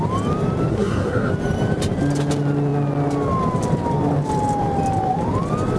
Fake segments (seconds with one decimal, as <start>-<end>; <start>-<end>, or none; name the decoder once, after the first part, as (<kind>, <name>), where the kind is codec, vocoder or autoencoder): 0.7-1.3 (codec, SNAC)